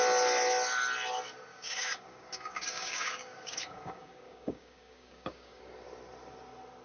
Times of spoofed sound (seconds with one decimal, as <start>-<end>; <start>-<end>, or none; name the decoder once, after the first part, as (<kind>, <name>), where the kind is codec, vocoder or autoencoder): 1.5-5.6 (codec, DAC)